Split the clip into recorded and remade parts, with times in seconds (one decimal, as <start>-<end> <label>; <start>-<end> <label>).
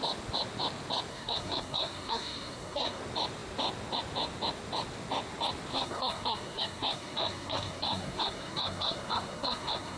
0.0-1.1 recorded; 1.1-3.0 remade; 3.0-5.7 recorded; 5.7-10.0 remade